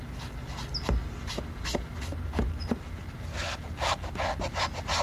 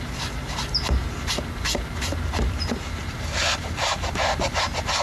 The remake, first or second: second